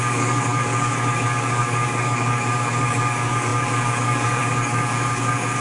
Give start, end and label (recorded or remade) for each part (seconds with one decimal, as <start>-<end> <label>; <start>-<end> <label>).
0.0-5.6 remade